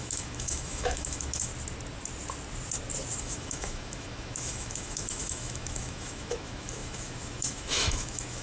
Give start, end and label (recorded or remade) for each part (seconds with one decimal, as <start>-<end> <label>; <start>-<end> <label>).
0.0-1.5 remade; 1.5-3.2 recorded; 3.2-8.4 remade